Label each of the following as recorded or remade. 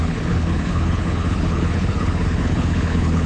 remade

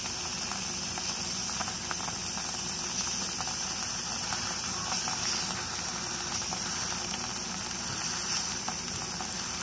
recorded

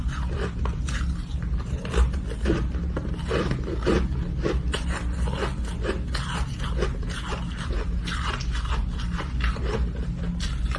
recorded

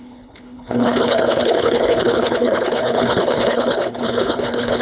remade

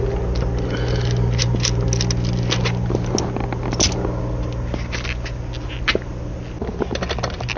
recorded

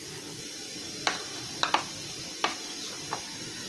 recorded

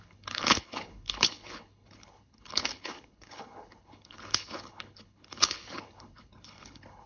remade